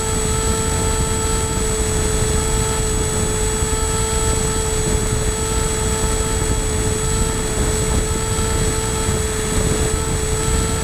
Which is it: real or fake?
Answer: real